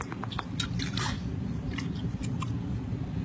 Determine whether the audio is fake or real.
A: real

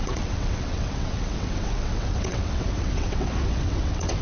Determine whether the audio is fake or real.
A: fake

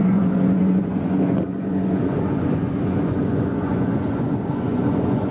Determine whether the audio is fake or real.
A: fake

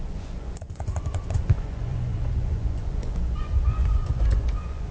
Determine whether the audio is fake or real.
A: fake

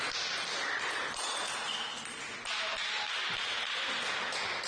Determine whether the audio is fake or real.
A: real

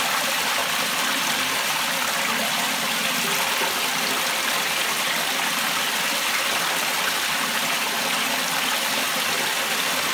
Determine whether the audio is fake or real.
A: real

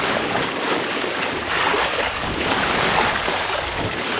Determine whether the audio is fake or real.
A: fake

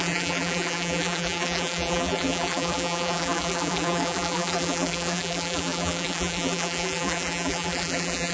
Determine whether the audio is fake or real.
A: fake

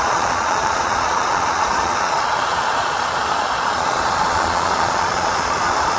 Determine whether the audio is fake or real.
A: fake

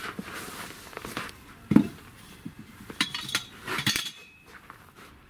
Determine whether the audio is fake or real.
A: fake